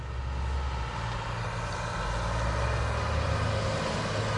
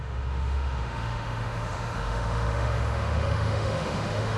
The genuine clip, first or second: first